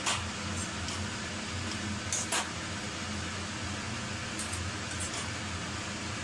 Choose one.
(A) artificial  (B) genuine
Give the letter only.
B